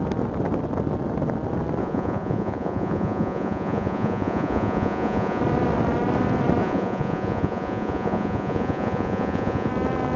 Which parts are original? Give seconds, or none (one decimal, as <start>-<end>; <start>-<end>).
0.0-1.8; 5.4-6.6; 9.7-10.2